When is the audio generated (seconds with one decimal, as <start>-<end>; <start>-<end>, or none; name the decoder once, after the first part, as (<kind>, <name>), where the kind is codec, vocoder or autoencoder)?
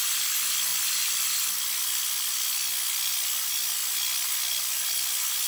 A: none